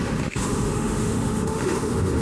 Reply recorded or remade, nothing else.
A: remade